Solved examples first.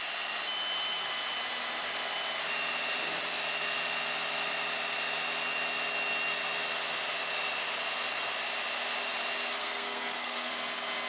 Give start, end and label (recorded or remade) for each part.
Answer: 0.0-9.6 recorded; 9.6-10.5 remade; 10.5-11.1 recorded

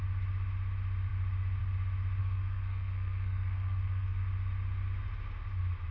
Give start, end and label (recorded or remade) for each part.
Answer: 0.0-2.2 recorded; 2.2-4.2 remade; 4.2-5.9 recorded

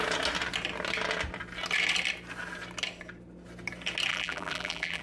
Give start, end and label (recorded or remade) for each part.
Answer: 0.0-4.1 recorded; 4.1-5.0 remade

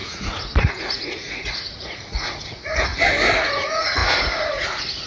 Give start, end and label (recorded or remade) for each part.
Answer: 0.0-2.9 remade; 2.9-3.4 recorded; 3.4-5.1 remade

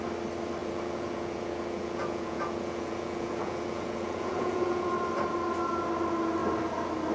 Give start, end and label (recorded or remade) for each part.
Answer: 0.0-0.6 recorded; 0.6-4.9 remade; 4.9-7.1 recorded